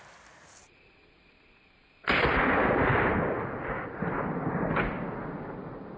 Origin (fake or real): real